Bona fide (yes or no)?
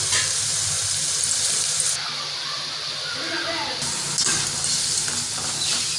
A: yes